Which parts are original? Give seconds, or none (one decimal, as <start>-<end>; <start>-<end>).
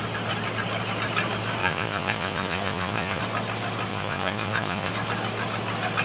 0.0-1.6; 3.2-3.9; 4.9-6.0